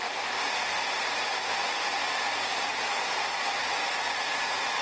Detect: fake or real fake